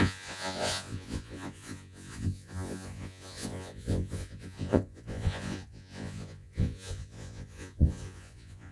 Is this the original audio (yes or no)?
no